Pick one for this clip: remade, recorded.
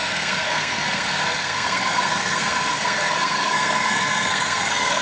remade